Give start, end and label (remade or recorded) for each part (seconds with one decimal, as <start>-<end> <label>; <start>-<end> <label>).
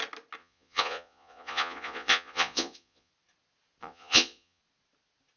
0.0-0.4 recorded; 0.4-3.1 remade; 3.1-3.8 recorded; 3.8-4.6 remade; 4.6-5.4 recorded